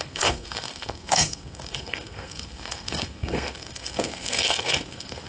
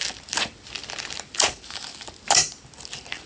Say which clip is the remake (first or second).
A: first